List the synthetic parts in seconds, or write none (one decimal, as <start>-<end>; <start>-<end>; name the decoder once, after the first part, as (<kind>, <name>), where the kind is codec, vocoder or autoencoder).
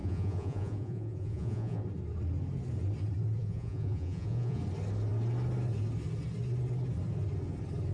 0.0-1.8 (vocoder, Vocos); 3.4-4.6